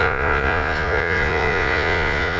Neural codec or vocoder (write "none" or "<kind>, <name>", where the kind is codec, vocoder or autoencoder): vocoder, Vocos